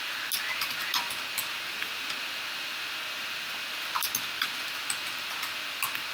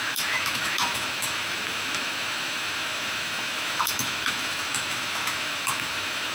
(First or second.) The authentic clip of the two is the first